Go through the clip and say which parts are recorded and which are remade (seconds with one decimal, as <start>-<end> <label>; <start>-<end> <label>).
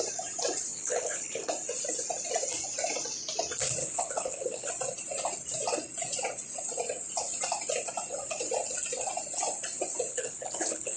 0.0-0.7 recorded; 0.7-1.5 remade; 1.5-3.8 recorded; 3.8-4.7 remade; 4.7-10.1 recorded; 10.1-11.0 remade